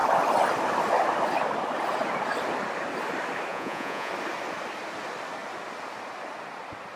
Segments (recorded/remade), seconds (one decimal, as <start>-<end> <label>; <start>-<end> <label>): 0.0-3.5 recorded; 3.5-4.1 remade; 4.1-7.0 recorded